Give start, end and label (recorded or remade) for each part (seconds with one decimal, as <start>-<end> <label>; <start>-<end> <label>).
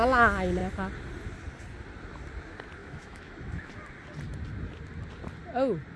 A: 0.0-2.8 recorded; 2.8-3.7 remade; 3.7-6.0 recorded